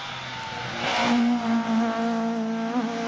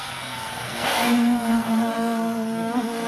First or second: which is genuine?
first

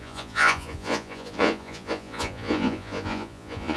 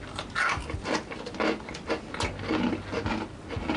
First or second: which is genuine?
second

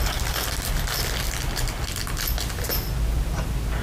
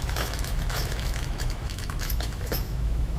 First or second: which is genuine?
first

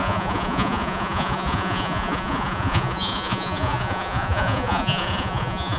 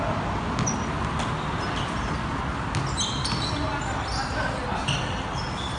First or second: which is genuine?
second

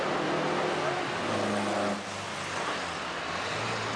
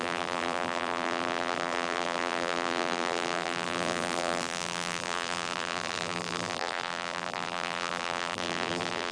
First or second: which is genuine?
first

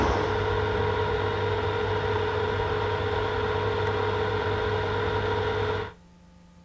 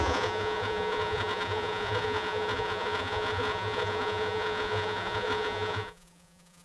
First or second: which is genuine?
first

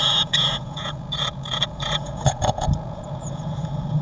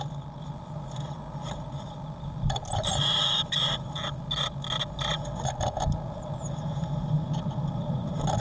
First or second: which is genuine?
second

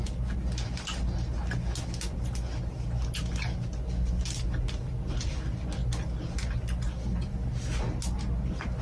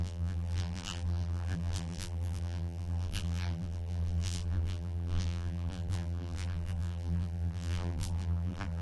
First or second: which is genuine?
first